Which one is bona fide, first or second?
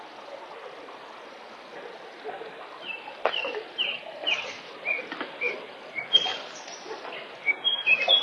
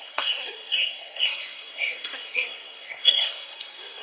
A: first